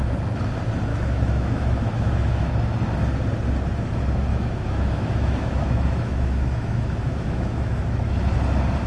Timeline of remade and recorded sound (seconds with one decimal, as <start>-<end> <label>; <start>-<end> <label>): 0.0-0.9 recorded; 0.9-2.5 remade; 2.5-4.3 recorded; 4.3-8.0 remade; 8.0-8.9 recorded